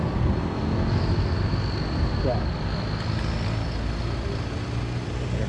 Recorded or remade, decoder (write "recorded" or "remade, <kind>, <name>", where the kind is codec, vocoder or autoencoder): recorded